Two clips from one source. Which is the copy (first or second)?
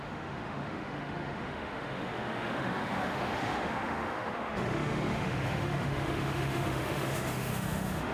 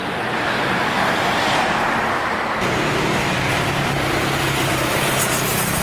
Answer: first